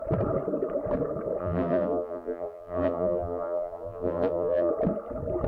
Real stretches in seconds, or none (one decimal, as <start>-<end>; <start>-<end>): 0.0-1.4; 4.7-5.5